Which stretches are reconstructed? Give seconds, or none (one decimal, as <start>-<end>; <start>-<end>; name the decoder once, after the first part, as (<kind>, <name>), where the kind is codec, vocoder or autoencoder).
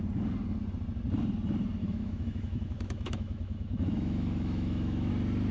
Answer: 1.8-5.1 (autoencoder, DAC-VAE)